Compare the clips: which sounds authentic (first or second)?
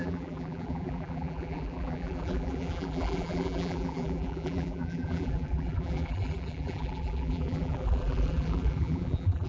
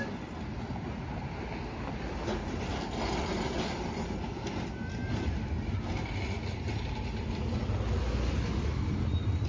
second